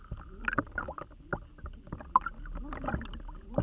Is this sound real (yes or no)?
yes